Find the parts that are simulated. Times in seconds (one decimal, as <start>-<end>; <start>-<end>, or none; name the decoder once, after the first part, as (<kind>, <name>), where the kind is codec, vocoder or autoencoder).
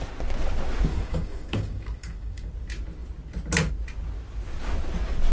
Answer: 0.9-2.5 (codec, DAC)